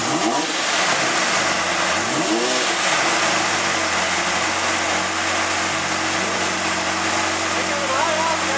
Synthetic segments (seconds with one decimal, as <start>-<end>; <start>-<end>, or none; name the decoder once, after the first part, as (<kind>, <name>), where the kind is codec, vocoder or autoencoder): none